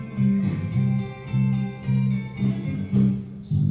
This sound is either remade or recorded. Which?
recorded